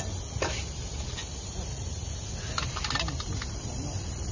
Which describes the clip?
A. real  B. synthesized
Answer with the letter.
B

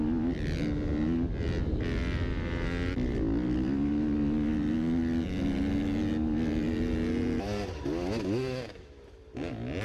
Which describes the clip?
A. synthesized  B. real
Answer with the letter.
B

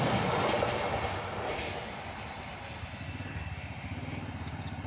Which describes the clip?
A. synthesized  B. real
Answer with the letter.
B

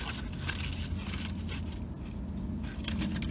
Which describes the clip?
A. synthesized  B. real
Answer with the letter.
B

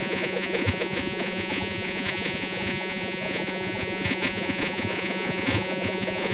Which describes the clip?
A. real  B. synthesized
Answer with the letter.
B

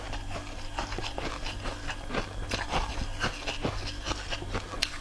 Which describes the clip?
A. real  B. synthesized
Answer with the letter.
A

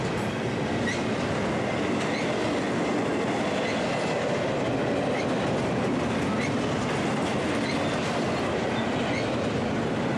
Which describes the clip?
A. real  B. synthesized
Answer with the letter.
A